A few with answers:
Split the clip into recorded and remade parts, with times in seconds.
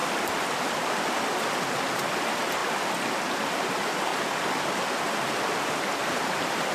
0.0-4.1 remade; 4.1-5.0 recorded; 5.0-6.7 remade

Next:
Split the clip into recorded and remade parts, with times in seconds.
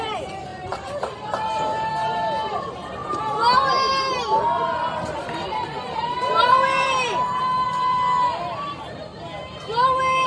0.0-9.1 remade; 9.1-10.3 recorded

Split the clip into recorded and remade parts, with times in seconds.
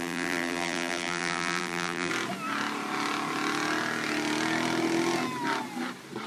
0.0-2.1 remade; 2.1-6.3 recorded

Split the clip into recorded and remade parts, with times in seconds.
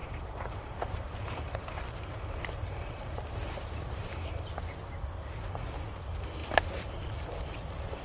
0.0-4.3 remade; 4.3-8.0 recorded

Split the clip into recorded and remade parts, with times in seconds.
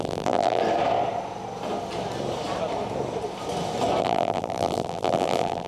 0.0-0.6 remade; 0.6-4.0 recorded; 4.0-5.7 remade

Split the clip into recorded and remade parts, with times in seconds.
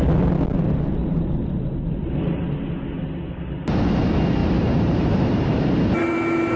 0.0-1.0 recorded; 1.0-1.9 remade; 1.9-4.4 recorded; 4.4-6.6 remade